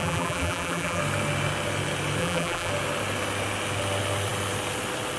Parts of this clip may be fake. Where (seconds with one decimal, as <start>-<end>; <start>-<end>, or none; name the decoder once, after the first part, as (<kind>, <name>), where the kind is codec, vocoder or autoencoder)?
0.0-1.0 (vocoder, BigVGAN v2); 2.2-2.7